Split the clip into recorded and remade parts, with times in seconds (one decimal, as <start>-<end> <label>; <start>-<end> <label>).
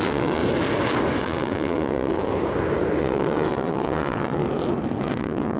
0.0-0.4 remade; 0.4-1.2 recorded; 1.2-2.3 remade; 2.3-3.0 recorded; 3.0-4.4 remade; 4.4-5.0 recorded; 5.0-5.6 remade